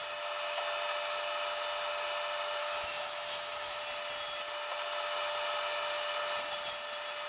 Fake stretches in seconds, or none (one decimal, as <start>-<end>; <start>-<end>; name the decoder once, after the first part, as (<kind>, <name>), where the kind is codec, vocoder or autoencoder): 2.6-3.8 (autoencoder, DAC-VAE)